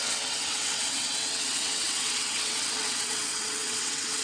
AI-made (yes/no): yes